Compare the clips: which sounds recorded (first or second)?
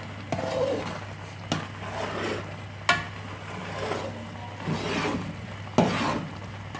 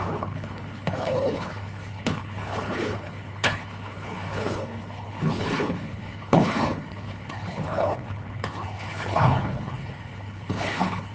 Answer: first